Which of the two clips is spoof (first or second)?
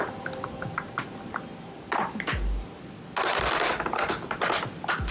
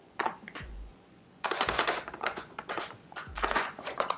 second